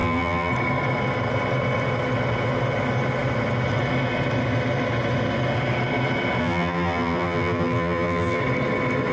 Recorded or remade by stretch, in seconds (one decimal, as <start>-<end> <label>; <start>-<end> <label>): 0.0-0.5 remade; 0.5-6.4 recorded; 6.4-8.4 remade; 8.4-9.1 recorded